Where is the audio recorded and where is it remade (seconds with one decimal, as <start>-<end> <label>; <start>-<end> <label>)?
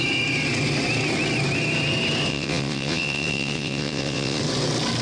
0.0-2.3 recorded; 2.3-4.4 remade; 4.4-5.0 recorded